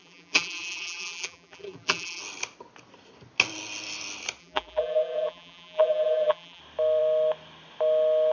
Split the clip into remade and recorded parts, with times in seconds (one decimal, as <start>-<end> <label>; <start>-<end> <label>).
0.0-2.2 remade; 2.2-4.4 recorded; 4.4-6.6 remade; 6.6-8.3 recorded